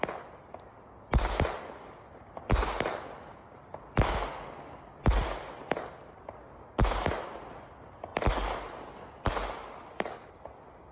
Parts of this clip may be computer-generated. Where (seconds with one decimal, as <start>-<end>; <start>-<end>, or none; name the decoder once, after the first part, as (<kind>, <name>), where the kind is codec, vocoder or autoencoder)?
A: none